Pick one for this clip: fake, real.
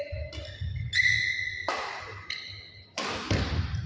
real